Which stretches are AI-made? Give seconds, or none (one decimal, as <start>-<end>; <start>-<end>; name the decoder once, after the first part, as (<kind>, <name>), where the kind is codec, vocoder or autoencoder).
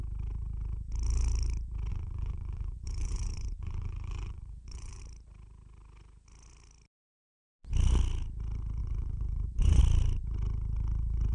1.9-5.0 (vocoder, Vocos); 8.8-9.8